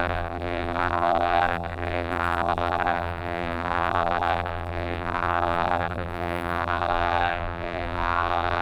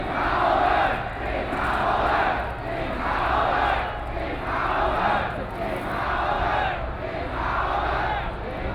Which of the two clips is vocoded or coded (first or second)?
first